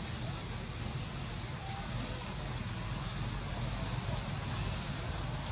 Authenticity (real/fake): real